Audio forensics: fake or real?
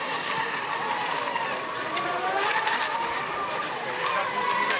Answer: real